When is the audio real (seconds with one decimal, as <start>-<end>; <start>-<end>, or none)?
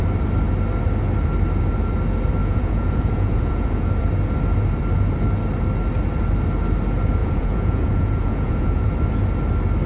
0.0-2.4; 3.9-7.2; 8.9-9.9